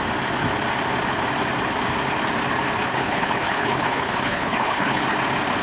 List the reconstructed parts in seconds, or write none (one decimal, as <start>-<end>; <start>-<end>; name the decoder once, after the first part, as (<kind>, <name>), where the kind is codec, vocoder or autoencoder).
2.9-5.0 (codec, HILCodec)